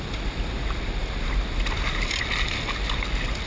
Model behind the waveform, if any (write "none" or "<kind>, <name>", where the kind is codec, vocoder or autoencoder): none